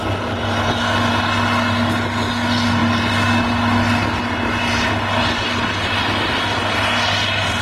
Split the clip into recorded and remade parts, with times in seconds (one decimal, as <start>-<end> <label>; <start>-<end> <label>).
0.0-7.6 recorded